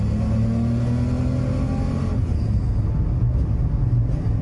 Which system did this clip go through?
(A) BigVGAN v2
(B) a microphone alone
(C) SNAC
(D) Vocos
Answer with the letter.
B